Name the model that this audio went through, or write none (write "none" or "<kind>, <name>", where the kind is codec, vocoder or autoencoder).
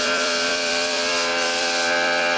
vocoder, BigVGAN v2